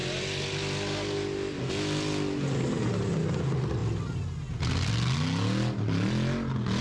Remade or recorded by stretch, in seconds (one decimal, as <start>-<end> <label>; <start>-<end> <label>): 0.0-6.8 recorded